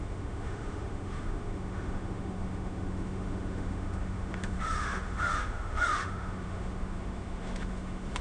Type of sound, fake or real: fake